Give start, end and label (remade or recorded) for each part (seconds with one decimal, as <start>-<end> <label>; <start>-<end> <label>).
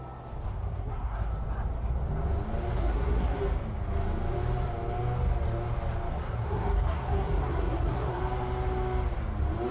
0.0-0.5 recorded; 0.5-1.3 remade; 1.3-2.8 recorded; 2.8-3.4 remade; 3.4-6.1 recorded; 6.1-8.2 remade; 8.2-9.7 recorded